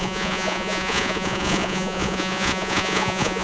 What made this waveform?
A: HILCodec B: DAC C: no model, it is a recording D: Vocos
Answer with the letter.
D